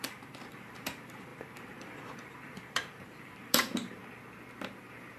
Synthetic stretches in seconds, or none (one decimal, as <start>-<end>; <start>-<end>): 0.0-4.0; 4.8-5.2